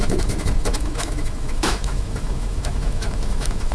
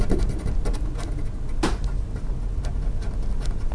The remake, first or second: first